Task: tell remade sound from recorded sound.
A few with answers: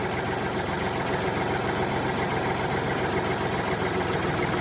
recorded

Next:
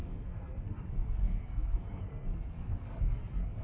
remade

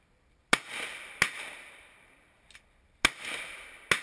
recorded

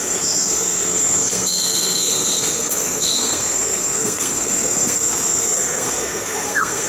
remade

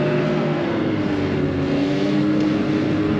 remade